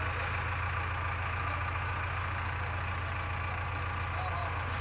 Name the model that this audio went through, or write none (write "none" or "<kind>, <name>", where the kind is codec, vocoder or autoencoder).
none